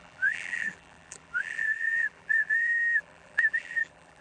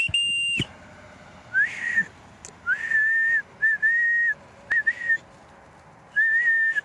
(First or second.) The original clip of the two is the second